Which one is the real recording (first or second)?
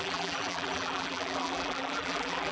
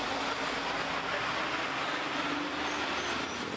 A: second